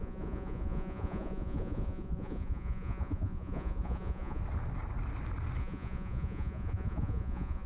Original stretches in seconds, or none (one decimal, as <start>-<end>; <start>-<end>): 4.4-5.6